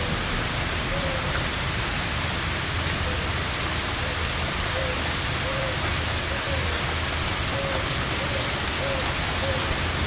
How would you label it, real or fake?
real